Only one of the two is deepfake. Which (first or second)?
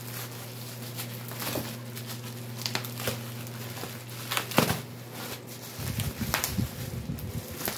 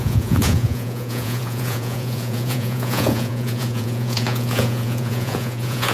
second